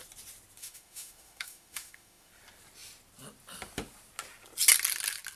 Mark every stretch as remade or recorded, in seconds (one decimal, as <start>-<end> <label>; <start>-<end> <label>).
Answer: 0.0-0.6 recorded; 0.6-2.3 remade; 2.3-5.4 recorded

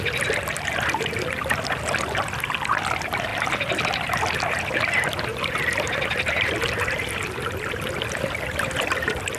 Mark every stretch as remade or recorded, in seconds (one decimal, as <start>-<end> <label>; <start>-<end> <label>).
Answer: 0.0-9.4 recorded

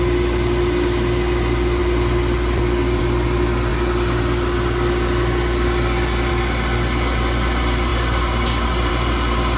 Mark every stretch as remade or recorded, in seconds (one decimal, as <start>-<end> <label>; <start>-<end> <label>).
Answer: 0.0-9.6 recorded

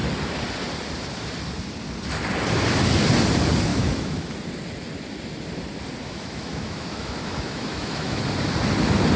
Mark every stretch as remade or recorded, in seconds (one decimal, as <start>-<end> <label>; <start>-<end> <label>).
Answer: 0.0-3.7 recorded; 3.7-4.3 remade; 4.3-6.0 recorded; 6.0-8.2 remade; 8.2-9.2 recorded

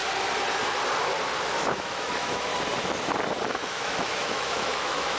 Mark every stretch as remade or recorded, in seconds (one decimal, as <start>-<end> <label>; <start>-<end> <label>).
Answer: 0.0-1.4 recorded; 1.4-2.5 remade; 2.5-3.5 recorded; 3.5-5.2 remade